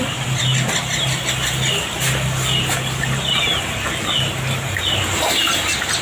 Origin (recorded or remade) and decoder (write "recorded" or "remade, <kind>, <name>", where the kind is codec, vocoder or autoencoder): recorded